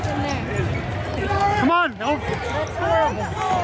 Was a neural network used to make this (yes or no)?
no